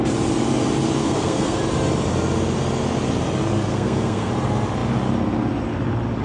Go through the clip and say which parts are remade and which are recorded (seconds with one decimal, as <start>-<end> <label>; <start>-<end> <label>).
0.0-1.0 recorded; 1.0-1.6 remade; 1.6-3.7 recorded; 3.7-4.3 remade; 4.3-6.2 recorded